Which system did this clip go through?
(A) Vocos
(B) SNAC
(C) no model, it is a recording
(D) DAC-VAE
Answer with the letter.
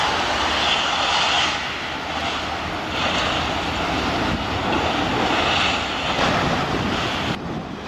C